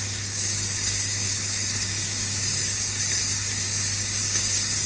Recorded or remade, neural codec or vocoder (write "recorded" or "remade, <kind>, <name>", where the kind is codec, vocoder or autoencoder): remade, codec, DAC